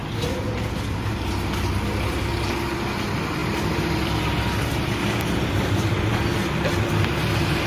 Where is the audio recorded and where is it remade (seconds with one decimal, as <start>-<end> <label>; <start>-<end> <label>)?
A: 0.0-7.7 recorded